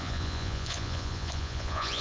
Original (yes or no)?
no